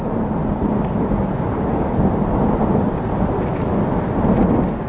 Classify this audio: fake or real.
real